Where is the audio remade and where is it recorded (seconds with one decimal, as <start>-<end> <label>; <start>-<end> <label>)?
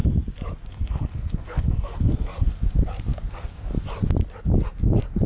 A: 0.0-0.7 recorded; 0.7-2.5 remade; 2.5-3.3 recorded; 3.3-3.7 remade; 3.7-5.3 recorded